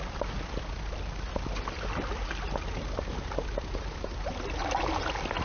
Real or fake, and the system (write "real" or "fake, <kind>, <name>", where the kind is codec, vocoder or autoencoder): real